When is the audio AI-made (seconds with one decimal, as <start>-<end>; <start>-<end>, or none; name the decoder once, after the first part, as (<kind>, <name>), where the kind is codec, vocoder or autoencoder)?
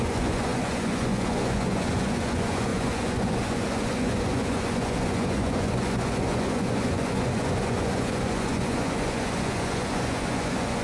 0.0-10.8 (vocoder, Vocos)